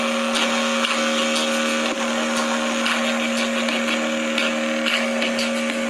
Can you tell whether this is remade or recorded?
recorded